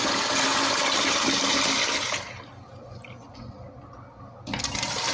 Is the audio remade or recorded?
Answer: recorded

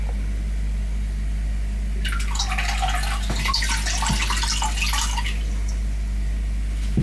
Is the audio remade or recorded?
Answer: recorded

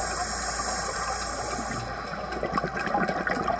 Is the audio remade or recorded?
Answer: recorded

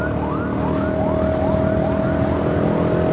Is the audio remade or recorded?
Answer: recorded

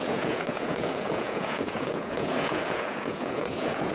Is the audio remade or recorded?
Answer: remade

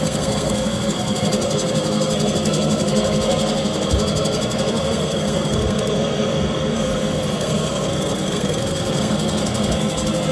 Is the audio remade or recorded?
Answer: remade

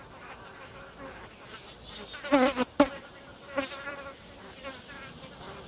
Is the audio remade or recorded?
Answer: recorded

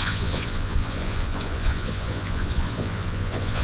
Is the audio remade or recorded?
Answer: remade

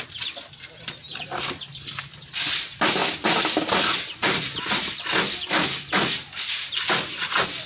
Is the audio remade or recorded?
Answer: recorded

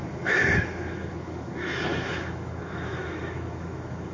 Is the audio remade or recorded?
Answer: remade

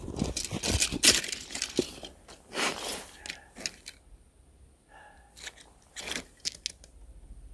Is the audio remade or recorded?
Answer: recorded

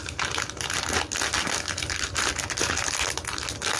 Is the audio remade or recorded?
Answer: recorded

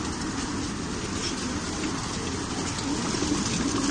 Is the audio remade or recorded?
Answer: recorded